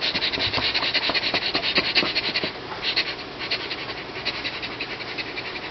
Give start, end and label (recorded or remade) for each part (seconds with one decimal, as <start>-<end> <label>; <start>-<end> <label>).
0.0-1.6 recorded; 1.6-2.4 remade; 2.4-5.7 recorded